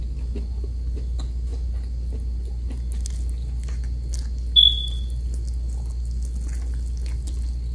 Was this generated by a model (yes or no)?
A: no